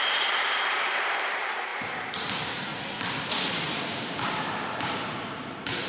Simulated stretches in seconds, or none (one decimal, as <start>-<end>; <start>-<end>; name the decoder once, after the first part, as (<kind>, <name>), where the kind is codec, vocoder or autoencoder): 0.0-2.7 (vocoder, BigVGAN v2); 3.3-5.9